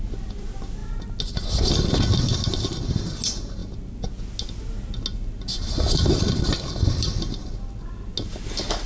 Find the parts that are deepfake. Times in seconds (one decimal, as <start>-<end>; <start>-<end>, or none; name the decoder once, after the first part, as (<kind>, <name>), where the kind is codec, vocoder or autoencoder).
none